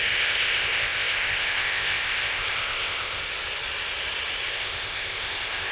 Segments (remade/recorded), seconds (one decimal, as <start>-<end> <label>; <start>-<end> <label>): 0.0-3.2 remade; 3.2-4.5 recorded; 4.5-5.7 remade